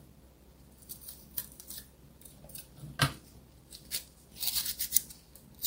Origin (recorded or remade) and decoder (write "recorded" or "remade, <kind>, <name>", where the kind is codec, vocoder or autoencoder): recorded